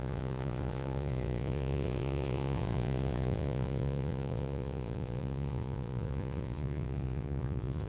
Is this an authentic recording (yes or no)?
no